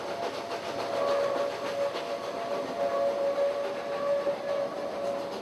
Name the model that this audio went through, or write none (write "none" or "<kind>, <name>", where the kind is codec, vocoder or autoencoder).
none